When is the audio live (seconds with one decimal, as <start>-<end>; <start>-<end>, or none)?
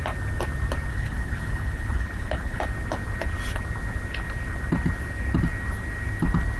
0.0-0.9; 2.6-6.6